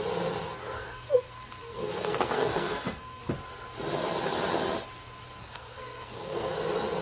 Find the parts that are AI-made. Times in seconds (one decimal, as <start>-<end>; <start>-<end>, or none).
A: 0.6-3.3; 5.4-6.5

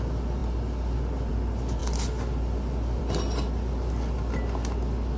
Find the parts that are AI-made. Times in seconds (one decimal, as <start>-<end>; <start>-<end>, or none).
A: none

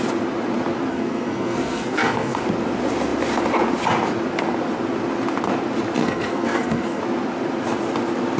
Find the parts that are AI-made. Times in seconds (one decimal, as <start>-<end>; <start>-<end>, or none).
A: 0.9-2.4; 6.0-7.0

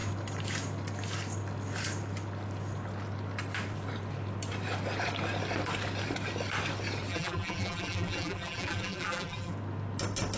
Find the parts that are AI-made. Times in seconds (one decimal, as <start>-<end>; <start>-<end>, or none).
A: 7.1-9.5

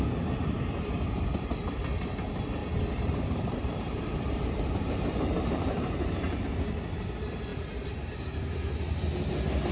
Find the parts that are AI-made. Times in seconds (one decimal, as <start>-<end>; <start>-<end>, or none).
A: 2.6-6.4

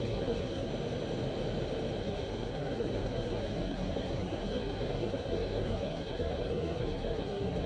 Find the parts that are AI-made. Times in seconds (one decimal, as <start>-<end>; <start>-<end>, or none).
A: 0.0-0.7; 2.0-7.7

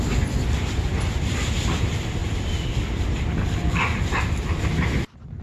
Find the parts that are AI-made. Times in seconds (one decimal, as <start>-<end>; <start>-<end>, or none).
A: 2.2-4.7